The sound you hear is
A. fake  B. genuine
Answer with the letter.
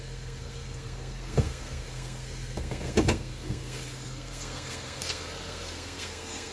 A